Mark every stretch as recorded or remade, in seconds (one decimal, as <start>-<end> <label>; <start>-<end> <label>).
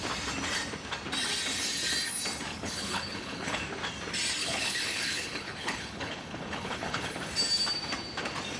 0.0-2.5 recorded; 2.5-3.6 remade; 3.6-4.4 recorded; 4.4-7.2 remade; 7.2-8.6 recorded